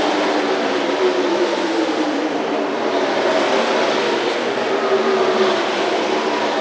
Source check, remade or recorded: remade